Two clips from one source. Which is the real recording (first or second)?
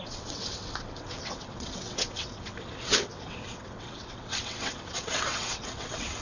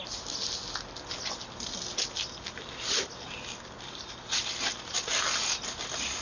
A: second